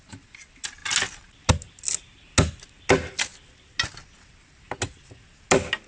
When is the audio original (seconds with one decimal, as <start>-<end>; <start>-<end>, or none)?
0.0-5.9